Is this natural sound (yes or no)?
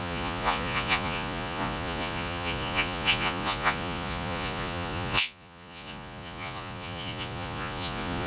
no